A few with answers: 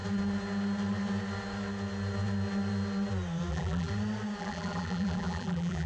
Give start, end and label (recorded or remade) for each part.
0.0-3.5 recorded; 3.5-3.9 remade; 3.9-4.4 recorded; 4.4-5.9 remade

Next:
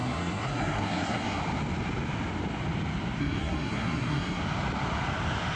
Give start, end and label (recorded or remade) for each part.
0.0-1.4 remade; 1.4-3.2 recorded; 3.2-4.4 remade; 4.4-5.6 recorded

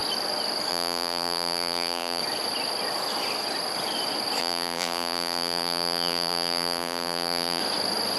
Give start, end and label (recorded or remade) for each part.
0.0-0.7 recorded; 0.7-2.2 remade; 2.2-4.4 recorded; 4.4-7.6 remade; 7.6-8.2 recorded

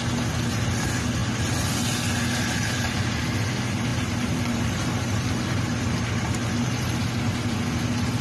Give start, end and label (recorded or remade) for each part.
0.0-3.9 recorded; 3.9-5.6 remade; 5.6-6.4 recorded; 6.4-7.0 remade; 7.0-8.2 recorded

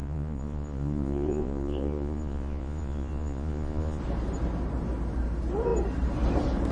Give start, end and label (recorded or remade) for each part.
0.0-4.0 remade; 4.0-6.7 recorded

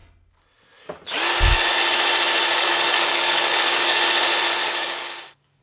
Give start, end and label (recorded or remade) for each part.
0.0-2.5 recorded; 2.5-4.0 remade; 4.0-4.6 recorded; 4.6-5.6 remade